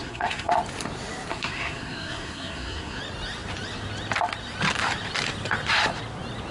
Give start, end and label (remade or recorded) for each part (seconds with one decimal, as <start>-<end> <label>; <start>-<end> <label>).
0.0-0.5 remade; 0.5-1.3 recorded; 1.3-3.0 remade; 3.0-6.5 recorded